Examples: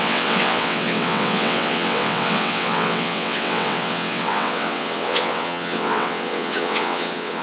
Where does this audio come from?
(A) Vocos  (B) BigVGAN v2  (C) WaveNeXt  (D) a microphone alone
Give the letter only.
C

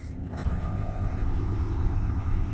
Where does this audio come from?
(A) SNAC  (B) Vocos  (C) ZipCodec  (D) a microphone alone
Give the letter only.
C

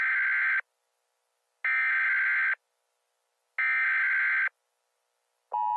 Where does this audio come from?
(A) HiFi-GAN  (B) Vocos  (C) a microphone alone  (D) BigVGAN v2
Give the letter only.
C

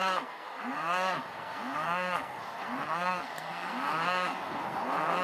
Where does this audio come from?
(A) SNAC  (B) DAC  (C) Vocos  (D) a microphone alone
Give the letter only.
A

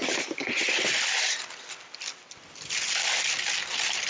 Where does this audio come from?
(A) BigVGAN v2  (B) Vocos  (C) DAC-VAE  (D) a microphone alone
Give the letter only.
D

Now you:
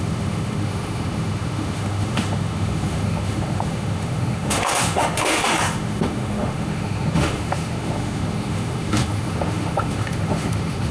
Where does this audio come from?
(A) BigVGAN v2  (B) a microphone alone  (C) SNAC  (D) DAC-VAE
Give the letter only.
D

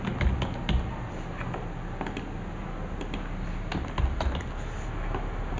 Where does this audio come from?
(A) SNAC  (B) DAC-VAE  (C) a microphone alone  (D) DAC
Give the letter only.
C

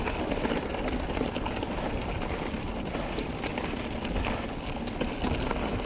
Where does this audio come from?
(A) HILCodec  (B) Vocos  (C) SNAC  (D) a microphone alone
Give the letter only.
D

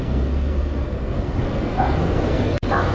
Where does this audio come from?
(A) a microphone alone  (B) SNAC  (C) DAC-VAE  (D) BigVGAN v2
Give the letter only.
B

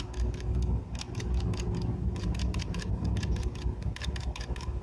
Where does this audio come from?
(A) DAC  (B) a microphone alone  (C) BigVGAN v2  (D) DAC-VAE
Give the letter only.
A